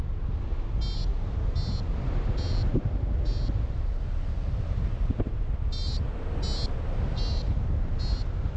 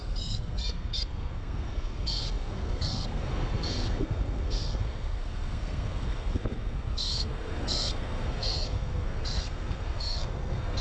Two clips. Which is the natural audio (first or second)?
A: first